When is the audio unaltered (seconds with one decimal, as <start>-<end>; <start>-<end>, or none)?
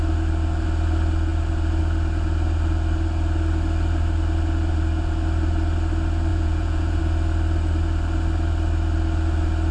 0.0-6.3; 7.0-9.7